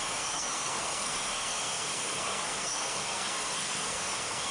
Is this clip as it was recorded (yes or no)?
no